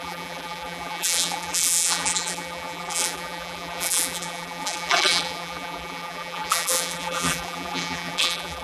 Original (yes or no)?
no